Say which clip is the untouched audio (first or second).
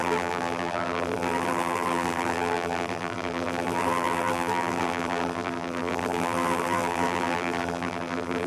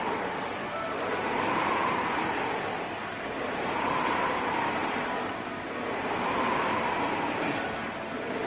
second